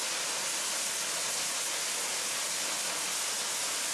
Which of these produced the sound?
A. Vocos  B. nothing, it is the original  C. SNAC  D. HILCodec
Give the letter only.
B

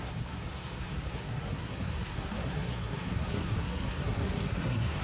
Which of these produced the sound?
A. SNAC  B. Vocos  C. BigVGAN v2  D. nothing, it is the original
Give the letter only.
A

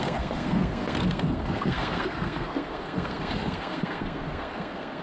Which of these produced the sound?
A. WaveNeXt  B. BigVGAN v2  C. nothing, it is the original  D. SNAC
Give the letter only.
D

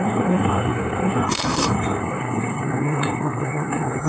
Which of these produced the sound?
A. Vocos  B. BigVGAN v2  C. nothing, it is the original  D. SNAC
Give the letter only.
D